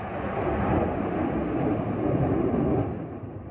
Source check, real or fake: real